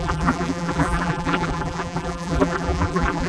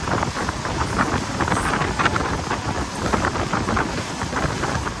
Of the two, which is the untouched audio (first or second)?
second